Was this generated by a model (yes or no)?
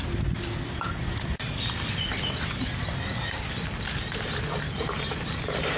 no